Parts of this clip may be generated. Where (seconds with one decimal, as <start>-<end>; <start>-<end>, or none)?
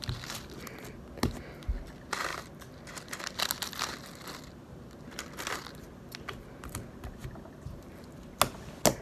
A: 2.3-3.2; 7.2-7.9